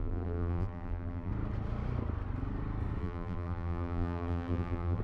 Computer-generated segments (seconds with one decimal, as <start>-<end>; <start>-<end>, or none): 0.0-1.3; 3.0-5.0